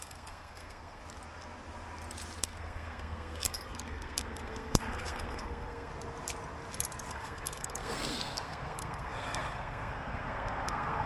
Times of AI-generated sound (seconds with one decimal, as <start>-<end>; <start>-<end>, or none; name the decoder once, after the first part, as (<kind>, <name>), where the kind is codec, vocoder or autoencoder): 0.0-1.0 (codec, SNAC); 2.4-5.9; 7.1-11.1